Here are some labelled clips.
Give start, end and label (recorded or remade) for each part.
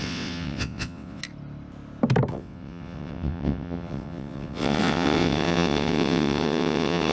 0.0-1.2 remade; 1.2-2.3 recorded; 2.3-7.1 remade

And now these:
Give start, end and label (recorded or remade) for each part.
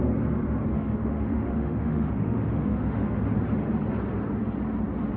0.0-0.7 recorded; 0.7-3.2 remade; 3.2-5.2 recorded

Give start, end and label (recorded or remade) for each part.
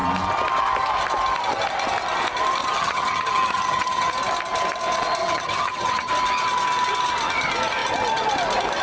0.0-2.6 recorded; 2.6-4.1 remade; 4.1-5.2 recorded; 5.2-6.1 remade; 6.1-8.8 recorded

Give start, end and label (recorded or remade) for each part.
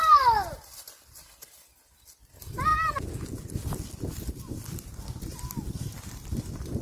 0.0-6.8 recorded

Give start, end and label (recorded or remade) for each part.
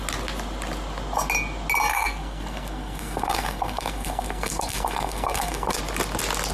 0.0-1.9 recorded; 1.9-5.8 remade; 5.8-6.5 recorded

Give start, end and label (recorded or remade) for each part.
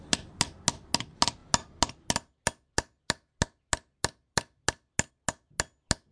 0.0-6.1 recorded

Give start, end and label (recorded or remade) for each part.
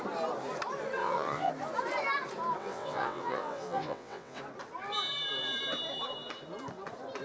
0.0-1.0 recorded; 1.0-1.5 remade; 1.5-2.6 recorded; 2.6-4.4 remade; 4.4-7.2 recorded